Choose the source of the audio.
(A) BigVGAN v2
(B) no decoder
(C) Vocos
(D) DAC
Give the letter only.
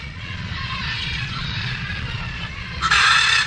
C